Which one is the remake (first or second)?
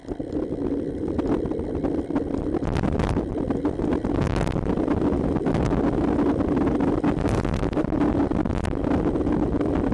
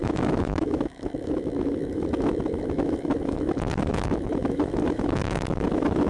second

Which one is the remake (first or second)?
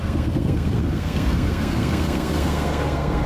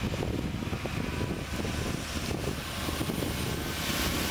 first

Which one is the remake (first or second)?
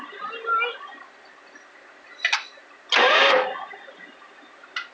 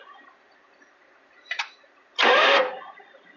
second